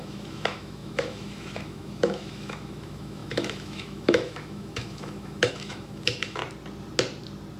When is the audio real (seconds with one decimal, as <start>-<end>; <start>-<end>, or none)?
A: 6.4-7.6